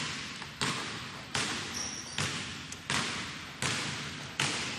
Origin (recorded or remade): recorded